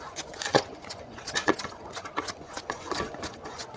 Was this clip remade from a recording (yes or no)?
yes